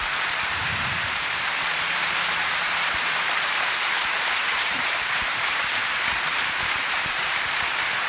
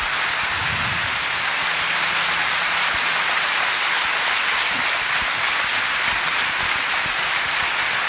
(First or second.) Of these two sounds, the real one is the second